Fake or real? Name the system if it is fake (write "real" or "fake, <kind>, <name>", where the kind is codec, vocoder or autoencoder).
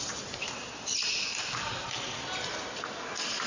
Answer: real